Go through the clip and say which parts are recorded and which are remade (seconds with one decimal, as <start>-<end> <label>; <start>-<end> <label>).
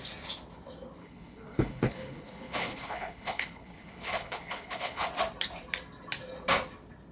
0.0-1.0 recorded; 1.0-5.1 remade; 5.1-7.1 recorded